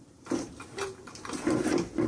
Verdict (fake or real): fake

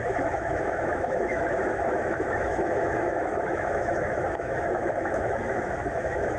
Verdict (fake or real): fake